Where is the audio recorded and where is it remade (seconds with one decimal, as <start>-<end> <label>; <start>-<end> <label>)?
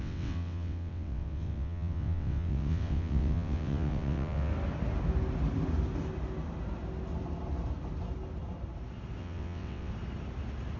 0.0-4.5 remade; 4.5-9.2 recorded; 9.2-9.9 remade; 9.9-10.8 recorded